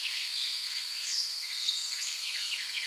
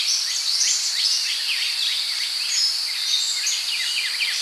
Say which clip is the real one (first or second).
second